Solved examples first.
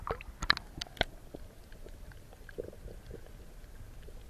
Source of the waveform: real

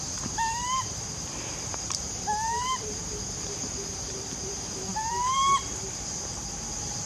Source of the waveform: fake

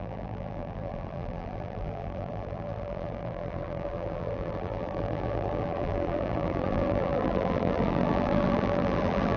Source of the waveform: fake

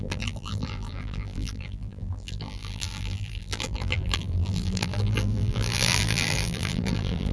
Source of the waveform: fake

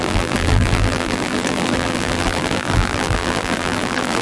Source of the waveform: fake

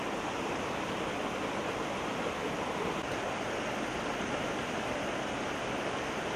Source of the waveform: fake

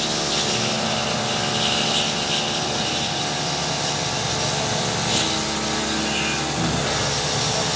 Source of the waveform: real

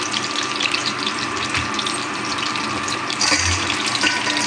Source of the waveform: fake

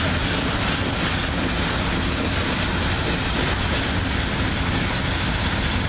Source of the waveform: real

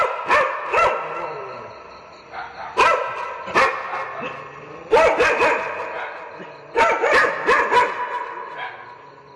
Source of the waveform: real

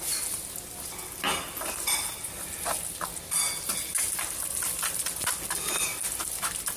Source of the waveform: real